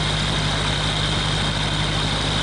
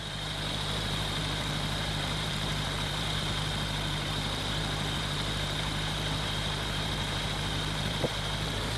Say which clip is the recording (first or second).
first